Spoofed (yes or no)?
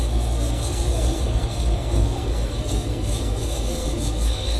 yes